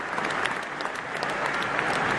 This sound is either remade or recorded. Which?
recorded